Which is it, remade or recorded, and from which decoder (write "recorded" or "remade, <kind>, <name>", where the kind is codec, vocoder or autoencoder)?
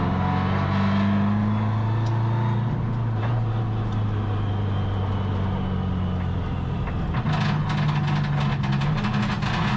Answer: recorded